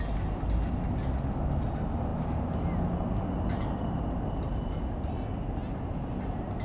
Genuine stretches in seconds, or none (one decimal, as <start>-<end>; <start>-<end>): 0.0-6.6

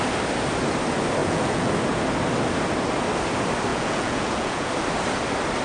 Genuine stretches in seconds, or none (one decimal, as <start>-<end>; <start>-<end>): 0.0-1.2; 1.7-3.7; 4.7-5.6

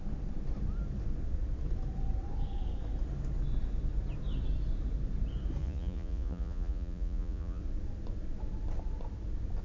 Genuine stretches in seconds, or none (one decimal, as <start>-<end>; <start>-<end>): 0.0-5.6; 7.6-9.6